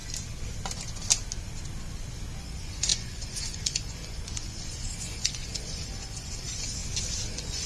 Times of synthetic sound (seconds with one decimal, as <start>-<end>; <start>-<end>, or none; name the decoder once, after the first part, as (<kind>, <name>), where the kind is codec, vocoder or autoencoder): 2.4-6.8 (vocoder, Vocos); 7.3-7.7